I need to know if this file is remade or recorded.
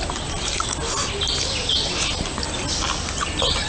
recorded